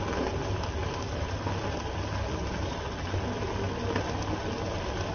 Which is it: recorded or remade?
recorded